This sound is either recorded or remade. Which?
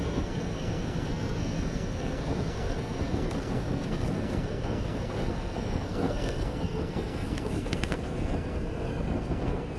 remade